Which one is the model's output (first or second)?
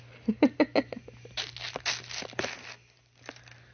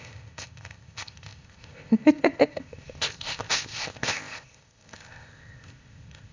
second